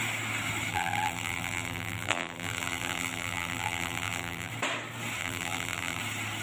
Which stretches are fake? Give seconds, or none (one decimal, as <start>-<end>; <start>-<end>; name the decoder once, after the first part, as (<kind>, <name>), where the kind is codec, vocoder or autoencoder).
0.7-4.5 (vocoder, BigVGAN v2); 5.2-6.0